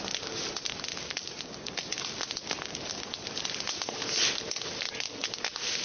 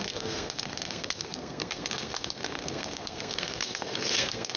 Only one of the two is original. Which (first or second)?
first